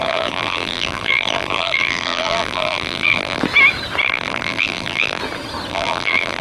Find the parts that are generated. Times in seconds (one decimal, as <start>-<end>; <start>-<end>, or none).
0.0-3.4; 4.0-5.2; 5.7-6.4